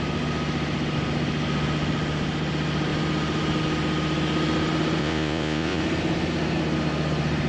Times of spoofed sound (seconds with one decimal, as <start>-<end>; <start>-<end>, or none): 5.0-5.8